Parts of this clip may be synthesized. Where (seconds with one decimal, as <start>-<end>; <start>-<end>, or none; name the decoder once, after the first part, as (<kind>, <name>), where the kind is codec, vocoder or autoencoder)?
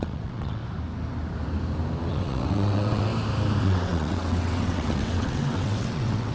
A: 0.0-0.6 (vocoder, WaveNeXt); 2.1-3.1; 3.6-6.3